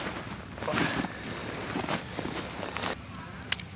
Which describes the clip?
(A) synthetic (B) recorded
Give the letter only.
B